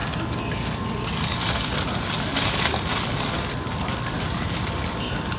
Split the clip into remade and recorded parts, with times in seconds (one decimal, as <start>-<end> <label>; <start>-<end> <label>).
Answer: 0.0-5.4 recorded